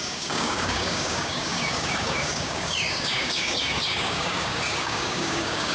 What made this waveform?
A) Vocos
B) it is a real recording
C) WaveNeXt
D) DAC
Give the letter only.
D